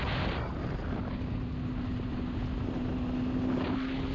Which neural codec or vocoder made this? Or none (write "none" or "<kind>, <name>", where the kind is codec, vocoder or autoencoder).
none